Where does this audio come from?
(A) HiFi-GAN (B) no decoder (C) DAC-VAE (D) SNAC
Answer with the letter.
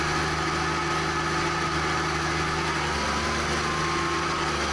B